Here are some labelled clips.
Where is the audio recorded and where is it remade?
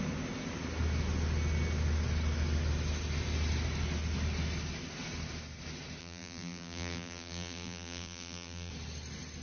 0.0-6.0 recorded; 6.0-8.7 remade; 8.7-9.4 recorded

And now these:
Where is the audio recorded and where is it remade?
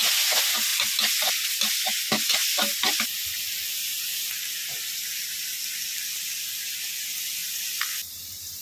0.0-8.6 recorded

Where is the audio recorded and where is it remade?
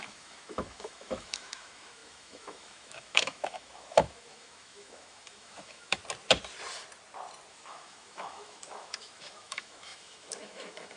0.0-6.0 remade; 6.0-7.5 recorded; 7.5-11.0 remade